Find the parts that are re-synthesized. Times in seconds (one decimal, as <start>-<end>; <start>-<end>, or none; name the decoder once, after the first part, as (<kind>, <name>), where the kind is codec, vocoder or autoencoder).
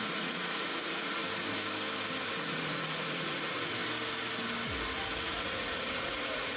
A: 0.0-1.2 (vocoder, Vocos); 2.2-3.8; 5.2-6.6